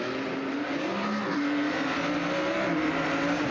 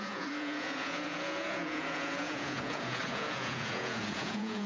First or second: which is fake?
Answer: second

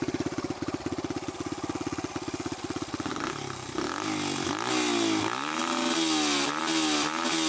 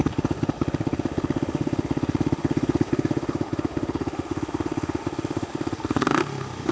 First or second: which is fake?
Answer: second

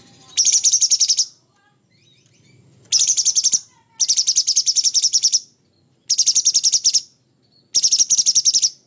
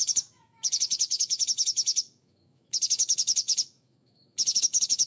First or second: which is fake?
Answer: second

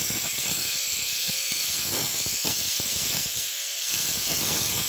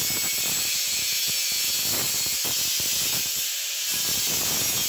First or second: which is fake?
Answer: first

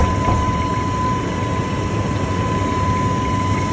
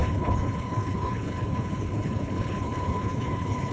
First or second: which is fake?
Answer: second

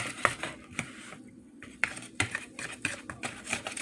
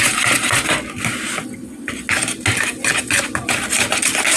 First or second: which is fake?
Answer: first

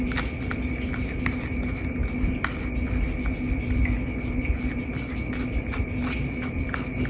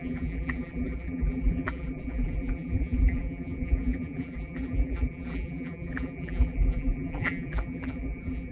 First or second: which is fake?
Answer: second